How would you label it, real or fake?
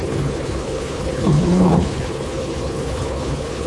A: fake